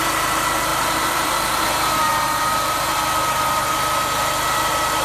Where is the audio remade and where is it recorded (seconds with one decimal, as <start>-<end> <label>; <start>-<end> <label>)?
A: 0.0-0.7 recorded; 0.7-3.7 remade; 3.7-5.0 recorded